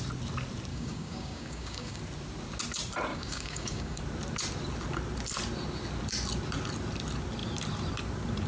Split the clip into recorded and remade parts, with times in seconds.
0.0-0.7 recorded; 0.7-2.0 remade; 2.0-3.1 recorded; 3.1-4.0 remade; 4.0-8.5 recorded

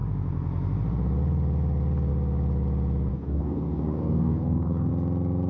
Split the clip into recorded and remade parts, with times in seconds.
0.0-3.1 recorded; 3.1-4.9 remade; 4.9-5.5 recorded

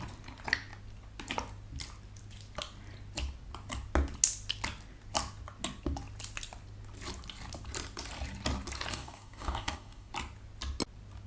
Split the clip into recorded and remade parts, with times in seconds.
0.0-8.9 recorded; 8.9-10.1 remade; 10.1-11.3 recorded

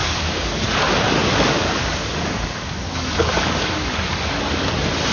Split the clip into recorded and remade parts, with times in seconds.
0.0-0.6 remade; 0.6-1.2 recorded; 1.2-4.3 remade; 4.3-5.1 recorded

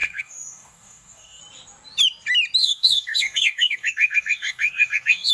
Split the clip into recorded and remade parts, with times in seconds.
0.0-1.4 remade; 1.4-2.6 recorded; 2.6-5.3 remade